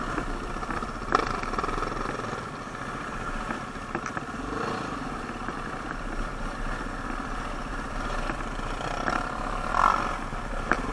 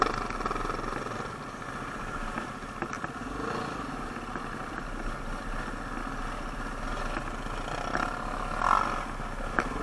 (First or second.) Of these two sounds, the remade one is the first